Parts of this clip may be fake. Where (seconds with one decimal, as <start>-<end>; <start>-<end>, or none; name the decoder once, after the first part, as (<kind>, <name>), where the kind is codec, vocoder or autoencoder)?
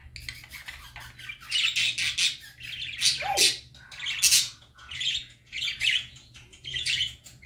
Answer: 4.3-7.5 (vocoder, Vocos)